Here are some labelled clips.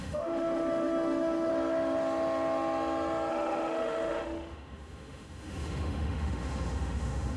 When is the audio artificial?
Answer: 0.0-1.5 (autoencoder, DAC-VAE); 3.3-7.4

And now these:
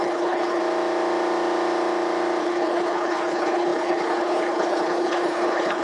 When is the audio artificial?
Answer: 0.0-0.6 (codec, HILCodec); 2.4-5.8

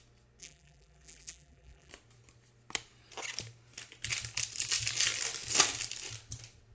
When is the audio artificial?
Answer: 0.4-1.9 (vocoder, BigVGAN v2)

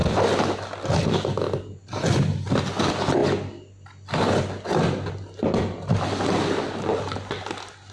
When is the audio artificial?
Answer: none

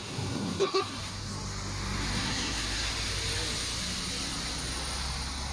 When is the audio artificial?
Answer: 0.0-1.3 (codec, SNAC); 2.1-2.9

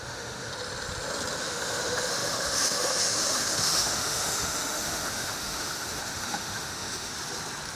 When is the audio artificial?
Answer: 0.0-0.5 (autoencoder, DAC-VAE); 1.4-7.1

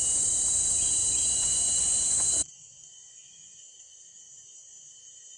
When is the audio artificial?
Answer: 1.0-4.2 (vocoder, Vocos)